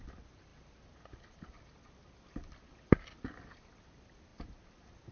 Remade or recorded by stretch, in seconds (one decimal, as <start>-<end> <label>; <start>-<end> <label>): 0.0-5.1 recorded